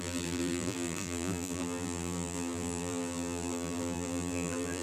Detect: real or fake fake